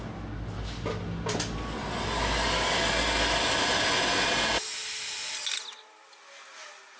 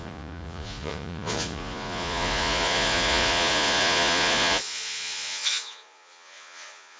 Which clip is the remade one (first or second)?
second